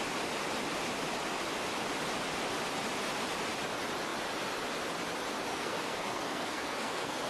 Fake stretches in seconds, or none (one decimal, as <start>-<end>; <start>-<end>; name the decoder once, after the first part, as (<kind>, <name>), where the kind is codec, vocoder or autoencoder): 5.5-7.3 (codec, SNAC)